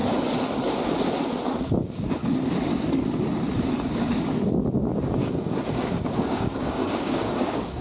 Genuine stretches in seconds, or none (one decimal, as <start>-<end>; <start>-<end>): 0.0-1.6; 2.2-5.2